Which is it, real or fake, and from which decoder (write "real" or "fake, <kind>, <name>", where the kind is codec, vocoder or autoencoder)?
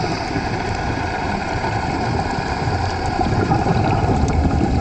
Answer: fake, vocoder, BigVGAN v2